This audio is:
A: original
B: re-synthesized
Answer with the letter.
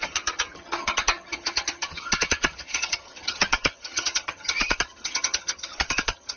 B